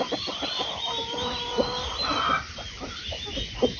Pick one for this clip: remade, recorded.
recorded